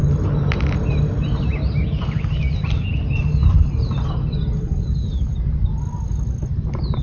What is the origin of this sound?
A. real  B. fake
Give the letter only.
A